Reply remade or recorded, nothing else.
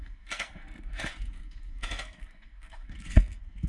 remade